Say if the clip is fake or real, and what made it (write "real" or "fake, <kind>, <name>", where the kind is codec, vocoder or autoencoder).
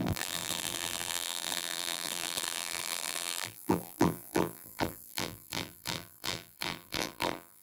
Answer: fake, vocoder, BigVGAN v2